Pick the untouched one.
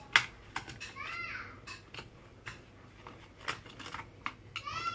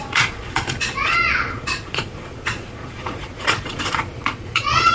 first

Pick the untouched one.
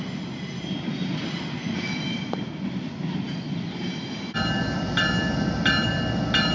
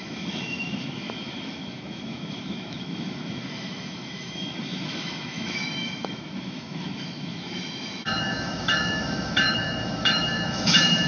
first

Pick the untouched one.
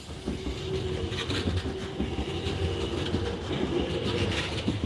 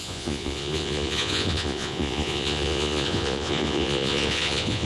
first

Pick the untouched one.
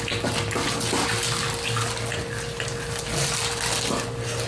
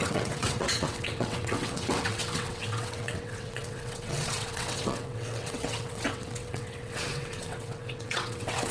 first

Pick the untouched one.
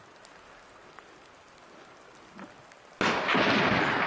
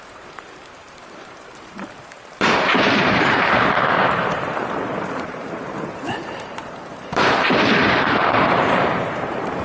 first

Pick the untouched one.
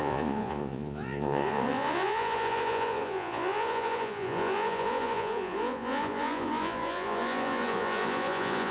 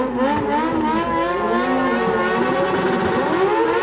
second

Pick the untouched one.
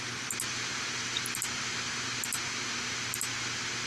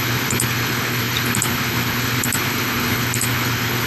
first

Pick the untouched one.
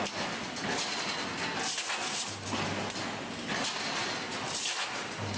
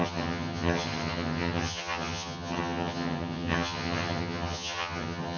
first